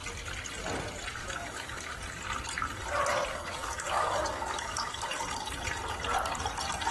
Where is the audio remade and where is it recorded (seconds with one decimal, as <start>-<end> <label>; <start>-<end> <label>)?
0.0-1.2 recorded; 1.2-2.0 remade; 2.0-3.3 recorded; 3.3-4.9 remade; 4.9-6.9 recorded